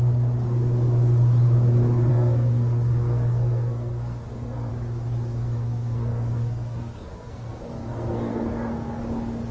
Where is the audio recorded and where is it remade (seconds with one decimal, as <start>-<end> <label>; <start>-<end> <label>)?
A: 0.0-2.1 recorded; 2.1-4.7 remade; 4.7-5.3 recorded; 5.3-9.0 remade; 9.0-9.5 recorded